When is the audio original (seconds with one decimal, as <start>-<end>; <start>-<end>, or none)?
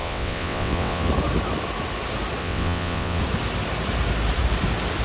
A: 1.1-2.4; 3.2-5.0